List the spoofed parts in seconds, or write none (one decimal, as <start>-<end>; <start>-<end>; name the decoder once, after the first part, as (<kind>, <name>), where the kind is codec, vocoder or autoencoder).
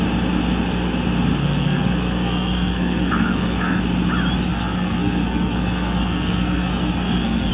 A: 1.4-3.8 (codec, SNAC); 4.5-7.5